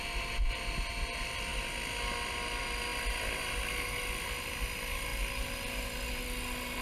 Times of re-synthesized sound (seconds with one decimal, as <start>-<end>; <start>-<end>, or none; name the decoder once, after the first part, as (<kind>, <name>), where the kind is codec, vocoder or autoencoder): none